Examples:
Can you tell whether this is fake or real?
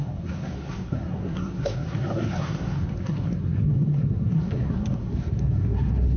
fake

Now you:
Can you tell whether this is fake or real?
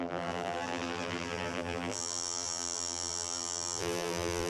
fake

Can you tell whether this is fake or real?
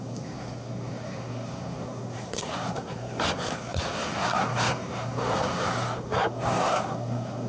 fake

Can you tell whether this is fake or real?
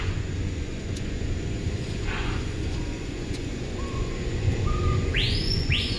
fake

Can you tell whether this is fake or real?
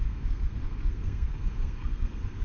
fake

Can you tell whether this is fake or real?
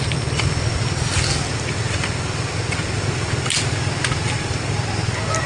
real